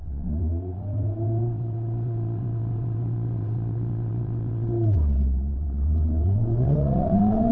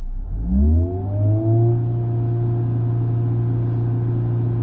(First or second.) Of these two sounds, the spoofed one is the first